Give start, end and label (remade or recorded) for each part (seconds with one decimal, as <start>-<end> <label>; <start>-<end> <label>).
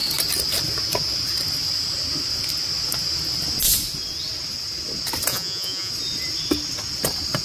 0.0-5.3 recorded; 5.3-5.9 remade; 5.9-7.4 recorded